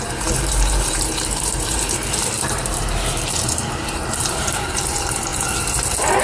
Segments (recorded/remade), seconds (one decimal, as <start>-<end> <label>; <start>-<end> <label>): 0.0-5.3 remade; 5.3-6.2 recorded

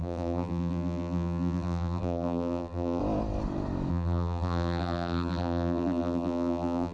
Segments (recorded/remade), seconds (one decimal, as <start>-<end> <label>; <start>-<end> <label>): 0.0-3.0 remade; 3.0-3.9 recorded; 3.9-6.9 remade

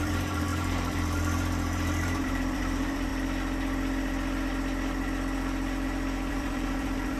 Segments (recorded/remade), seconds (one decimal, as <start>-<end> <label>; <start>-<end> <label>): 0.0-3.1 remade; 3.1-6.3 recorded; 6.3-7.2 remade